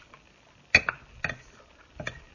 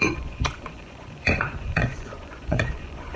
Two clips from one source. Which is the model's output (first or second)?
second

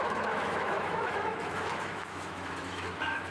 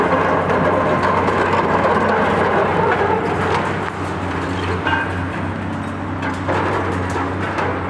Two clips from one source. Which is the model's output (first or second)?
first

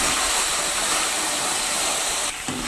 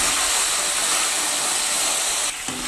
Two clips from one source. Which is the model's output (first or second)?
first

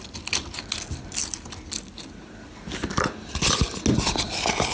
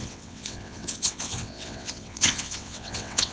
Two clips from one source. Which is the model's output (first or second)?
second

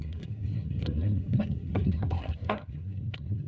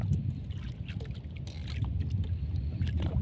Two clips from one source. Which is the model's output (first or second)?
first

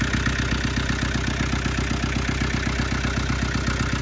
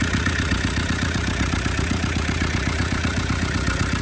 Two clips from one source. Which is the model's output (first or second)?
second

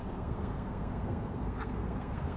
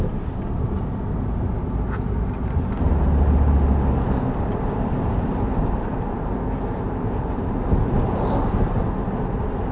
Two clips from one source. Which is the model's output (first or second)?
first